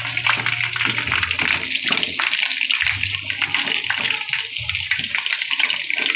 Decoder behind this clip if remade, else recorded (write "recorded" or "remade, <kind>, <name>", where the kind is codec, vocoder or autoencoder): recorded